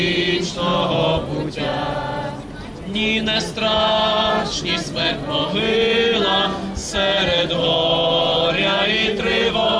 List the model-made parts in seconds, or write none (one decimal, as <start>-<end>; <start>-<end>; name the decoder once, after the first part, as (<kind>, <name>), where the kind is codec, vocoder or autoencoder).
none